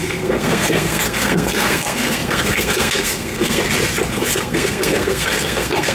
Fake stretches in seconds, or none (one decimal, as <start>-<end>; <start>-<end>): 0.0-3.6; 4.1-5.9